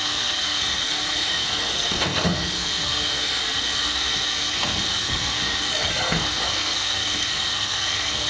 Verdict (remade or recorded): remade